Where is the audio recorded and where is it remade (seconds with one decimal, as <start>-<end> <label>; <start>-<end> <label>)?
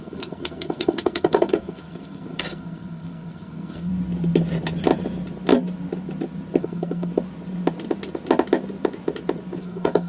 0.0-3.9 remade; 3.9-6.6 recorded; 6.6-7.1 remade; 7.1-9.6 recorded; 9.6-10.1 remade